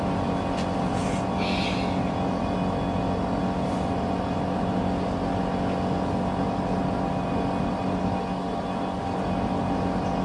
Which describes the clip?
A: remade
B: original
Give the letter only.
B